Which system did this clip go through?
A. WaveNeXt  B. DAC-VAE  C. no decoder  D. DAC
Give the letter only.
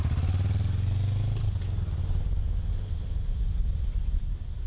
C